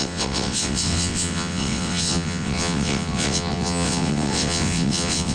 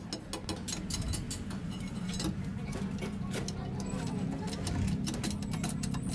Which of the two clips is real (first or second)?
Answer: second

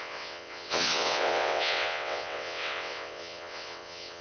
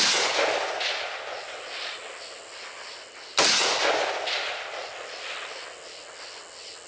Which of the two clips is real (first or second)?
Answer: second